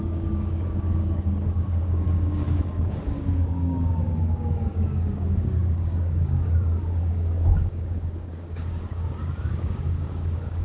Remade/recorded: remade